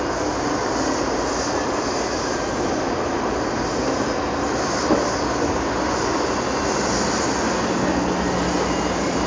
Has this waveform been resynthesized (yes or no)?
no